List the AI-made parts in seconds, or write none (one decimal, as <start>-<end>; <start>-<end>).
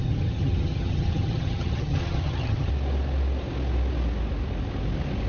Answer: 0.0-2.7